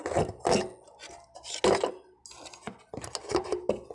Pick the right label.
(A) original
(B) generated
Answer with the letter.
A